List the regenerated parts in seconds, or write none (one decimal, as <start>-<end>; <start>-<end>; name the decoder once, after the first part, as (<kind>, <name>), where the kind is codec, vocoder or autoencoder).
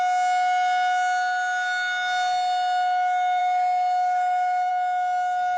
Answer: 3.4-4.7 (codec, DAC)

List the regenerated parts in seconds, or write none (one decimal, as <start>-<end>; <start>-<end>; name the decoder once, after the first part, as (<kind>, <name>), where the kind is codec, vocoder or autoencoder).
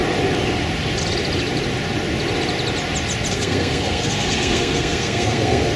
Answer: 3.3-5.8 (codec, SNAC)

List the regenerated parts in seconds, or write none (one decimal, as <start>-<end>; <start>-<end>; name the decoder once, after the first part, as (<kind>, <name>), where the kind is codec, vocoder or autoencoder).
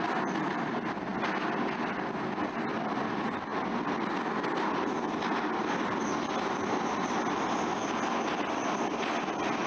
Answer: none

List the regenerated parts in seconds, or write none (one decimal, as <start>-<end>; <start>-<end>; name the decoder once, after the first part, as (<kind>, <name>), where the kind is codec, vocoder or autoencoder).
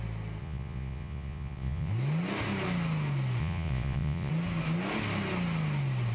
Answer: 0.4-1.9 (vocoder, Vocos); 3.4-4.3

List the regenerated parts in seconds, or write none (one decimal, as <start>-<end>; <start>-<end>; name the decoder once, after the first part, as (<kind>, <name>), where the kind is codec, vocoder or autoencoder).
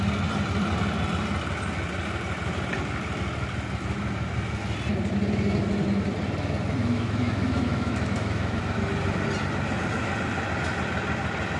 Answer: 6.8-8.6 (autoencoder, DAC-VAE)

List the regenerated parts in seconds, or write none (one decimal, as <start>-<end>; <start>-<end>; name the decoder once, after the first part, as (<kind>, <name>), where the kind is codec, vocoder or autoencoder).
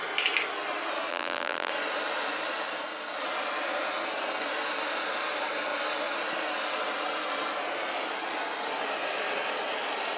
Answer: 1.1-1.7 (vocoder, BigVGAN v2)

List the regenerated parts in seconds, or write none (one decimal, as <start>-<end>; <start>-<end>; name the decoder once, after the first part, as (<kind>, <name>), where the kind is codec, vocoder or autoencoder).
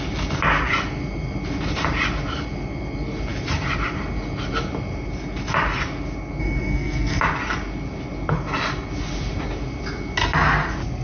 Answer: 6.4-7.2 (codec, SNAC)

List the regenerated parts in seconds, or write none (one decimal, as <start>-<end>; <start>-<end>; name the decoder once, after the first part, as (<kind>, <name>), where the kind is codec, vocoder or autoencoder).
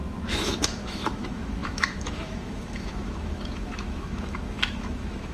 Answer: 0.0-5.3 (autoencoder, DAC-VAE)